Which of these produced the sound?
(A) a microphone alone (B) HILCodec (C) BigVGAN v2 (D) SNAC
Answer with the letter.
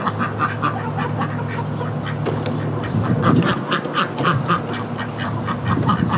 A